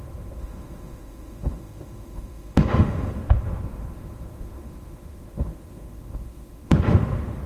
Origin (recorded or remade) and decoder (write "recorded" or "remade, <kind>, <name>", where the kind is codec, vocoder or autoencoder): remade, autoencoder, DAC-VAE